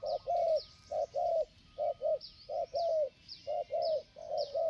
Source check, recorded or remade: recorded